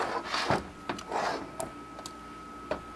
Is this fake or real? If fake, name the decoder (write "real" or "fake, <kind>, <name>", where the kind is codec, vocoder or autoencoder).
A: real